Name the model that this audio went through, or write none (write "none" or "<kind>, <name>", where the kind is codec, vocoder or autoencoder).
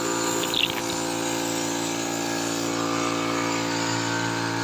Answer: none